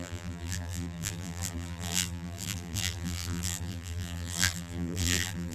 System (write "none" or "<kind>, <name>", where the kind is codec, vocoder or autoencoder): vocoder, BigVGAN v2